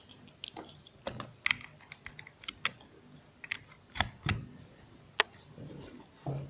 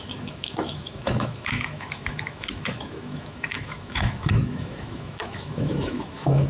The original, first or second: first